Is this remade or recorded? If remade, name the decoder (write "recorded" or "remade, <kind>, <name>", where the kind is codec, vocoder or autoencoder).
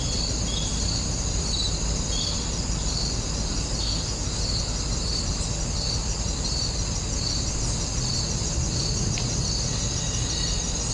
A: recorded